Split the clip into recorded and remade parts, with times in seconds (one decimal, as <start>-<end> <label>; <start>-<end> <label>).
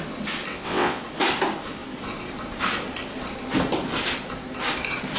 0.0-0.5 recorded; 0.5-1.0 remade; 1.0-5.2 recorded